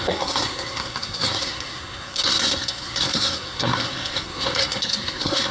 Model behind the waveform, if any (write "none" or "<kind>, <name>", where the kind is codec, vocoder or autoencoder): codec, SNAC